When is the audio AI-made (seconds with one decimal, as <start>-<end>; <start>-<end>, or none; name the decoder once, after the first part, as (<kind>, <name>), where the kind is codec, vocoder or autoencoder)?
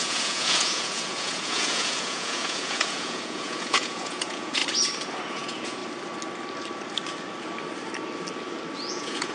0.0-4.6 (vocoder, Vocos); 5.3-5.8; 8.9-9.3